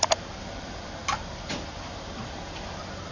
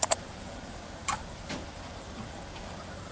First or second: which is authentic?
first